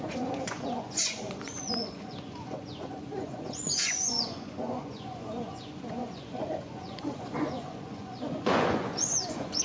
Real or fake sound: fake